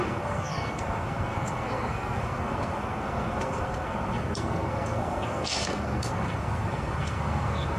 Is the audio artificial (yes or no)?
yes